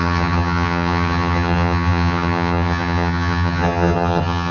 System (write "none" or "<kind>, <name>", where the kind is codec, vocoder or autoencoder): vocoder, HiFi-GAN